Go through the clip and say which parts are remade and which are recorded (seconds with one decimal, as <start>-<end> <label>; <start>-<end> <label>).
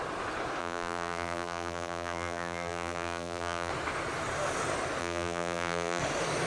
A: 0.0-0.6 recorded; 0.6-3.7 remade; 3.7-5.0 recorded; 5.0-6.0 remade; 6.0-6.5 recorded